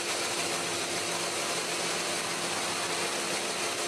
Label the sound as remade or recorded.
recorded